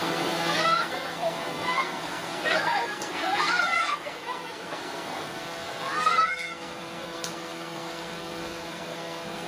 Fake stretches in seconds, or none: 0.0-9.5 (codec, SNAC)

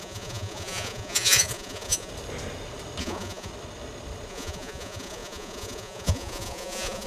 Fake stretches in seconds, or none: 0.0-2.1 (vocoder, Vocos); 3.0-3.5; 4.3-7.1

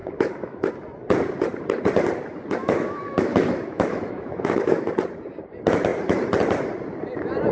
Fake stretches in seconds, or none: 0.0-0.7 (autoencoder, DAC-VAE); 2.6-4.9

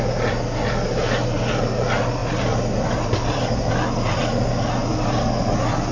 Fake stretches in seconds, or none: none

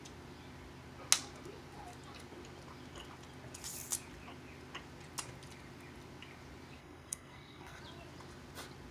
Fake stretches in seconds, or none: 6.8-7.8 (codec, SNAC)

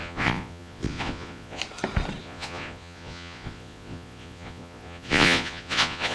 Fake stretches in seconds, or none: 0.0-1.6 (vocoder, Vocos); 2.2-6.1